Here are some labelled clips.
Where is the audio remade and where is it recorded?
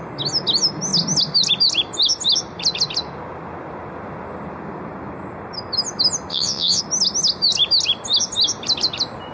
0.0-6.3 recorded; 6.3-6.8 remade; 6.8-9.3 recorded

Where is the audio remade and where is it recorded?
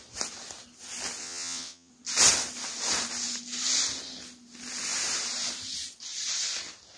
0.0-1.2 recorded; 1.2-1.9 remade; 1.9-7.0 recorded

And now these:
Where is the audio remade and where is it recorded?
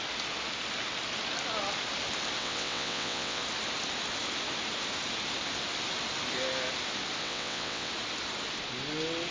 0.0-2.4 recorded; 2.4-3.4 remade; 3.4-7.2 recorded; 7.2-7.9 remade; 7.9-9.3 recorded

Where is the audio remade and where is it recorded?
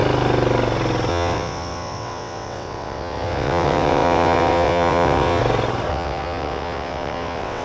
0.0-1.1 recorded; 1.1-5.4 remade; 5.4-5.9 recorded; 5.9-7.6 remade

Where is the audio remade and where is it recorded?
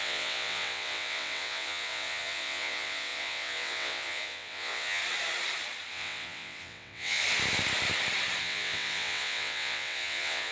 0.0-5.0 remade; 5.0-5.9 recorded; 5.9-7.2 remade; 7.2-8.4 recorded; 8.4-10.5 remade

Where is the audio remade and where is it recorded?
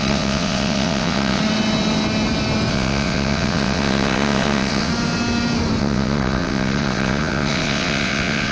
0.0-1.4 remade; 1.4-2.7 recorded; 2.7-4.9 remade; 4.9-5.8 recorded; 5.8-8.5 remade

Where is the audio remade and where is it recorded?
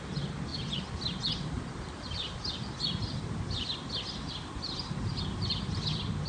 0.0-6.3 recorded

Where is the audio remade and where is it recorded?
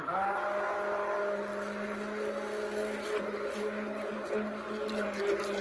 0.0-5.6 recorded